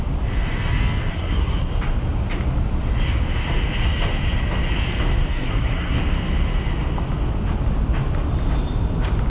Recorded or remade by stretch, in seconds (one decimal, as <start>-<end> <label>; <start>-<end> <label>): 0.0-1.1 recorded; 1.1-1.7 remade; 1.7-5.3 recorded; 5.3-6.0 remade; 6.0-9.3 recorded